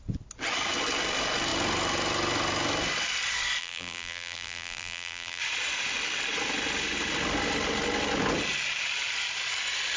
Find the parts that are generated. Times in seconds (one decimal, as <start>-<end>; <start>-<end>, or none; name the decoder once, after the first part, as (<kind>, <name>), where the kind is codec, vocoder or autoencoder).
3.6-5.4 (vocoder, BigVGAN v2)